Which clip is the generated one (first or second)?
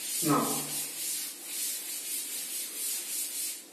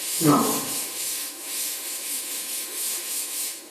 second